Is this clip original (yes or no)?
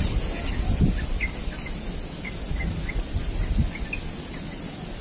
yes